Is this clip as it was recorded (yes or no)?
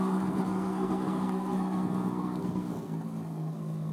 no